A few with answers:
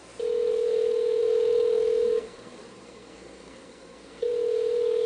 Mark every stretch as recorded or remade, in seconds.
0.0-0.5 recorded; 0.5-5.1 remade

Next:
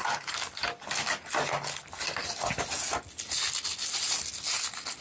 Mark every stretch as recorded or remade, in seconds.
0.0-5.0 recorded